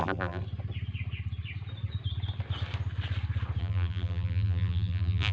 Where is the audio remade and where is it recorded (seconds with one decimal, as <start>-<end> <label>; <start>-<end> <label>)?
0.0-0.4 remade; 0.4-3.6 recorded; 3.6-5.3 remade